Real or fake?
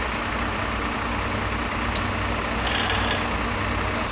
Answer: real